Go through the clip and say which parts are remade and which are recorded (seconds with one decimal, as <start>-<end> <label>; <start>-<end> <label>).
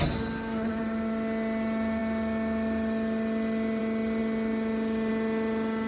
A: 0.0-5.9 recorded